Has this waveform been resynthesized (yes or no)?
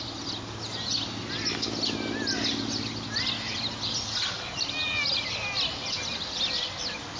no